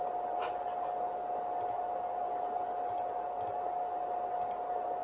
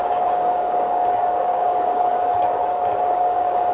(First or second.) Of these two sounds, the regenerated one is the second